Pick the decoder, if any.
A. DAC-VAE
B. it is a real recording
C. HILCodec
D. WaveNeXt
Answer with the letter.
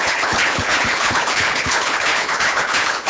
C